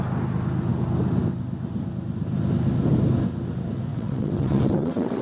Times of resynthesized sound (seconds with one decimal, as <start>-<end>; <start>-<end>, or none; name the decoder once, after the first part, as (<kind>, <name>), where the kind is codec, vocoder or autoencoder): 3.9-5.2 (vocoder, WaveNeXt)